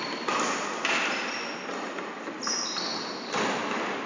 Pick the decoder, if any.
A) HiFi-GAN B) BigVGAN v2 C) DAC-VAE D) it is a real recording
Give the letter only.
D